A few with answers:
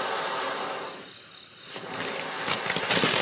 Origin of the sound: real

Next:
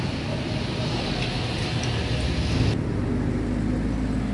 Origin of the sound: real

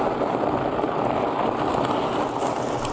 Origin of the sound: real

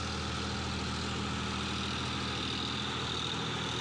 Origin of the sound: real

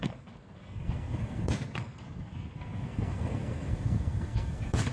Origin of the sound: fake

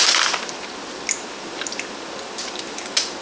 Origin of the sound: real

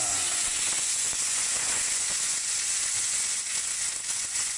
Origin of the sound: fake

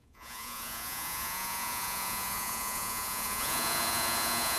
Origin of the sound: fake